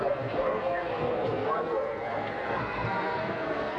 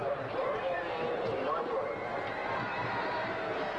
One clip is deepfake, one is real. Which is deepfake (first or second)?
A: first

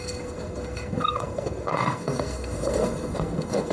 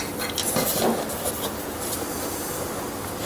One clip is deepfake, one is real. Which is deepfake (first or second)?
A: first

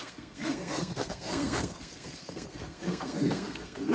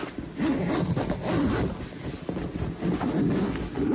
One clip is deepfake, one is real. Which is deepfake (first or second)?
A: first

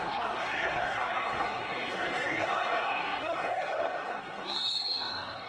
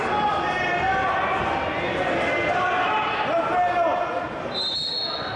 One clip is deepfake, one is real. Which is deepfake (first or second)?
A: first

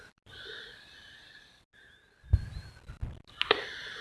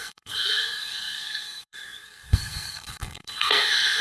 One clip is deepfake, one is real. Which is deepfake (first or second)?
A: second